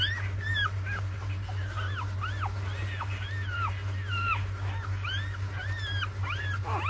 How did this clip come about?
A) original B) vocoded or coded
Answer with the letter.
A